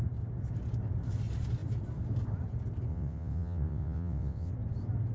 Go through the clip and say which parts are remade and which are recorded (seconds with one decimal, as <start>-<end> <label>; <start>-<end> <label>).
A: 0.0-2.9 recorded; 2.9-4.5 remade; 4.5-5.1 recorded